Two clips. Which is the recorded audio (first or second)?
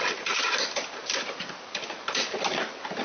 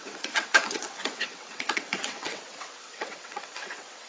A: first